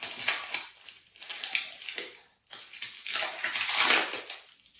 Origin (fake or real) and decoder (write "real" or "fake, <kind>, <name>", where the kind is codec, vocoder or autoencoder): real